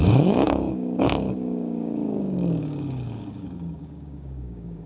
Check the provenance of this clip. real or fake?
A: fake